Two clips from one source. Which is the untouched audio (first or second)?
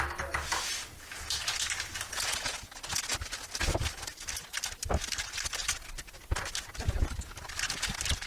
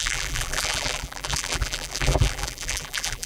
first